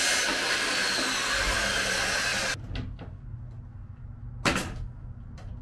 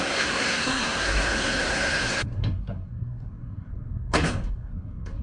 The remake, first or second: second